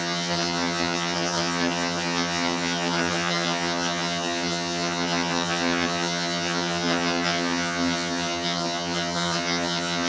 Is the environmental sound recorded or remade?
remade